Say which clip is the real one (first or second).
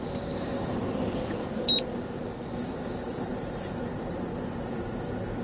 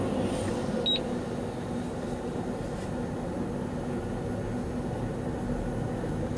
second